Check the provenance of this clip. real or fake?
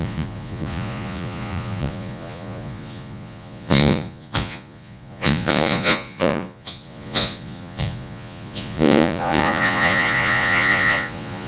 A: fake